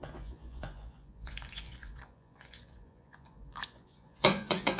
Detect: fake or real fake